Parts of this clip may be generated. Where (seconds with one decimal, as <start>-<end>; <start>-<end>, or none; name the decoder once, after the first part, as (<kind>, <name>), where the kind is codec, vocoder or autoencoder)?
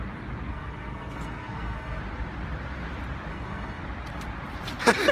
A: 0.5-2.0 (codec, SNAC); 3.3-3.8